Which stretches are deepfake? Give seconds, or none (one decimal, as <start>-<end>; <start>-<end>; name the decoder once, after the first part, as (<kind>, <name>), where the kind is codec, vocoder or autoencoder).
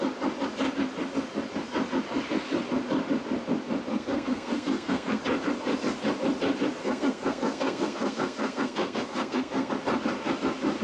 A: 3.9-5.2 (codec, SNAC); 6.8-9.7